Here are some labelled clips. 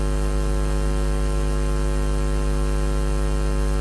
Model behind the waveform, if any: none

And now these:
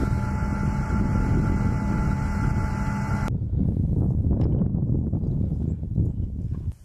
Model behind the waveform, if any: none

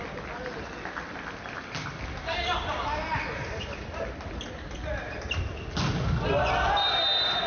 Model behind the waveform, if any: none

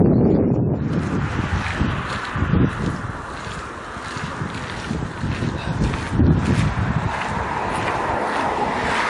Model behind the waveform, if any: none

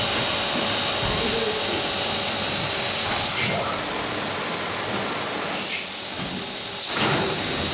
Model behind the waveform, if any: none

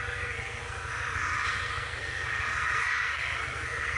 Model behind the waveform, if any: codec, SNAC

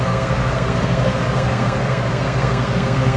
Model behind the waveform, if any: codec, SNAC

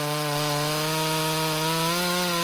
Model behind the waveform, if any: none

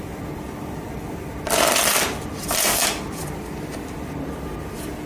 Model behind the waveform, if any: none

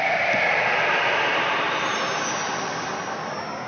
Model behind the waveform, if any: none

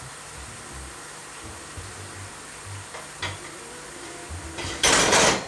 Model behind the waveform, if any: none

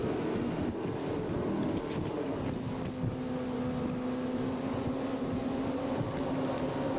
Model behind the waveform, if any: none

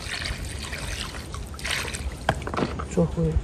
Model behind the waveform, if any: none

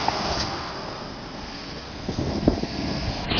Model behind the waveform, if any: codec, SNAC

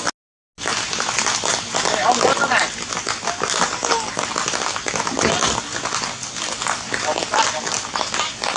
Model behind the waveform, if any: none